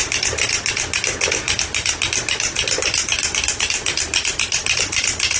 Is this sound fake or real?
real